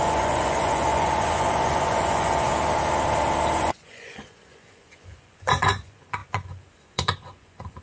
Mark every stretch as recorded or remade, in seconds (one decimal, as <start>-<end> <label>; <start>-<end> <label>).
0.0-2.5 remade; 2.5-3.6 recorded; 3.6-7.8 remade